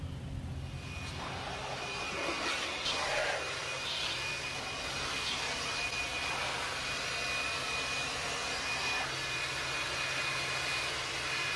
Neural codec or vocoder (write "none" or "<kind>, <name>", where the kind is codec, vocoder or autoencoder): none